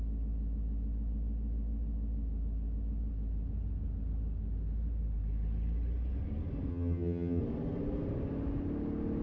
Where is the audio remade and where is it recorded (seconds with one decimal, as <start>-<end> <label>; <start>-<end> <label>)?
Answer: 0.0-6.7 recorded; 6.7-7.4 remade; 7.4-9.2 recorded